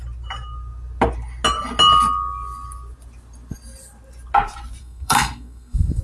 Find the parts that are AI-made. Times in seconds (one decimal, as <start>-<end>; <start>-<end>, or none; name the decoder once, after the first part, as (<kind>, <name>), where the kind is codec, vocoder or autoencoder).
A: 4.8-6.0 (codec, SNAC)